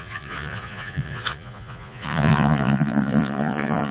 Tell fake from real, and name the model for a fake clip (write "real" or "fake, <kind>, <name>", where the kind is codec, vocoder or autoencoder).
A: fake, vocoder, Vocos